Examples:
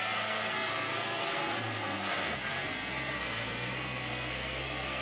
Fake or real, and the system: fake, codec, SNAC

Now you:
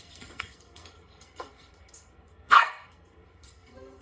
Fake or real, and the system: fake, codec, SNAC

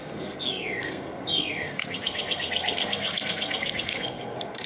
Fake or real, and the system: fake, codec, SNAC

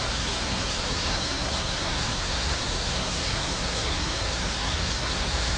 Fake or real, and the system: fake, codec, SNAC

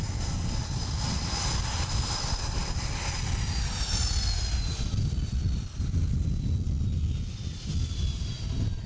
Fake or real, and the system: real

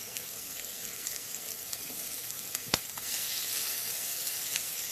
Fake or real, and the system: fake, codec, SNAC